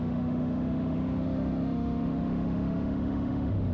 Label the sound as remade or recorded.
remade